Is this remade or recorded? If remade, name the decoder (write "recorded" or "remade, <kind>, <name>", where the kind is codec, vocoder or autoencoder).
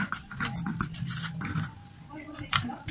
recorded